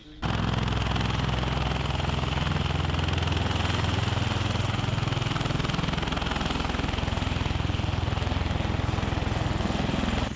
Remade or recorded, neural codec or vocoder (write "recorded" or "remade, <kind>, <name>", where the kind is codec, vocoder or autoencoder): recorded